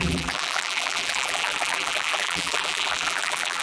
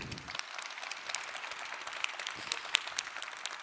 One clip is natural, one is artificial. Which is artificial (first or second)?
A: first